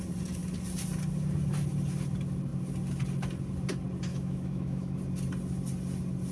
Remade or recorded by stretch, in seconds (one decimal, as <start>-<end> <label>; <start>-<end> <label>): 0.0-4.1 recorded; 4.1-5.0 remade; 5.0-6.3 recorded